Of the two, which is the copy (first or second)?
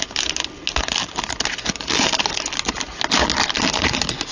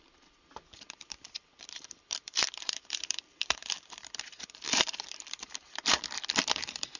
second